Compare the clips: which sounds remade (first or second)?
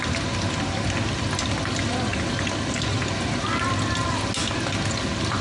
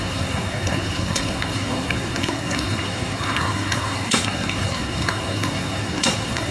second